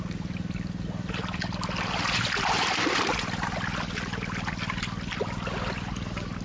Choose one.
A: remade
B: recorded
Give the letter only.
B